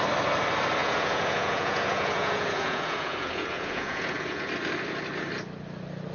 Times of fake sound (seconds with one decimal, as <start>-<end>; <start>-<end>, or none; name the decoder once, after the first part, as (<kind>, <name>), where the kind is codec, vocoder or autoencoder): 0.8-4.5 (vocoder, Vocos)